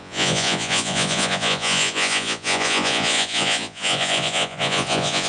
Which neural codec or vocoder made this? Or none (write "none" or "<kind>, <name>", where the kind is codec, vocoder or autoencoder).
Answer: vocoder, Vocos